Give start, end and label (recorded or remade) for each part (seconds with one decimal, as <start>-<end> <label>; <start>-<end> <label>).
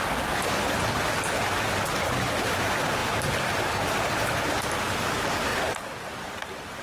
0.0-5.5 recorded; 5.5-6.8 remade